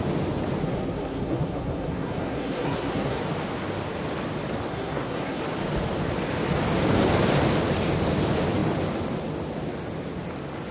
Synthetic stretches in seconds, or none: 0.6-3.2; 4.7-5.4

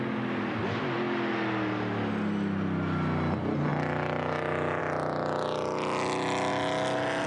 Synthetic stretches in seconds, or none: none